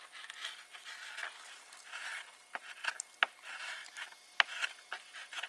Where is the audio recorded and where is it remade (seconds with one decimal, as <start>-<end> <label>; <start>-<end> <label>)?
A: 0.0-5.5 recorded

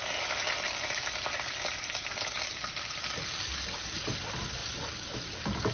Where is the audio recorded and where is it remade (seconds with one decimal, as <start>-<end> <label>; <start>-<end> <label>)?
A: 0.0-5.7 recorded

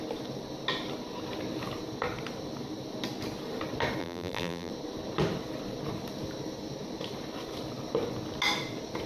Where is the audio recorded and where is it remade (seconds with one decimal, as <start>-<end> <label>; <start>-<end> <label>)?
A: 0.0-4.0 recorded; 4.0-4.7 remade; 4.7-9.1 recorded

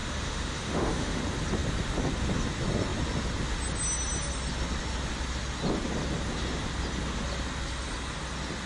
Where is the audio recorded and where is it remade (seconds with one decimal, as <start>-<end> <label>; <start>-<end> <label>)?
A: 0.0-1.2 remade; 1.2-8.7 recorded

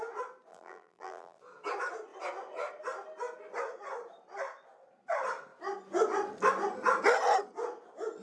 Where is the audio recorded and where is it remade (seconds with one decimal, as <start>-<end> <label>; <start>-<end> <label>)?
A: 0.0-0.5 recorded; 0.5-1.4 remade; 1.4-8.2 recorded

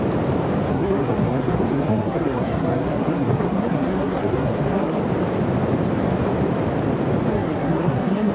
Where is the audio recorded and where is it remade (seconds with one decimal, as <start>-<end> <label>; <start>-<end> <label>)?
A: 0.0-0.7 recorded; 0.7-5.0 remade; 5.0-7.3 recorded; 7.3-8.3 remade